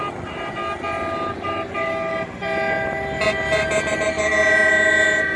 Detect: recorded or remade recorded